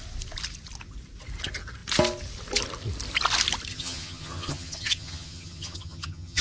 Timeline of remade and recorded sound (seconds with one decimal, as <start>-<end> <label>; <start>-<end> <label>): 0.0-3.7 recorded; 3.7-6.4 remade